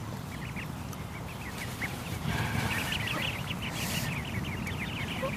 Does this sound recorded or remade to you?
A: recorded